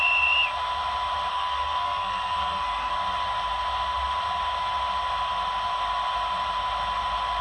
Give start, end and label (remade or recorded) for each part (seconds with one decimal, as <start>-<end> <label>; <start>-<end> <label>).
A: 0.0-1.3 recorded; 1.3-2.9 remade; 2.9-7.4 recorded